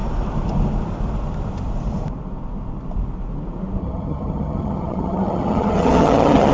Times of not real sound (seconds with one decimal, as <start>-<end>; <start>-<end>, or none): 3.8-6.5